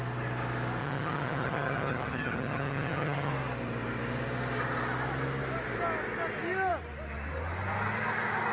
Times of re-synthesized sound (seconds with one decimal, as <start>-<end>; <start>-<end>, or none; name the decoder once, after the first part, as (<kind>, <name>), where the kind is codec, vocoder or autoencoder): 0.8-3.3 (vocoder, HiFi-GAN)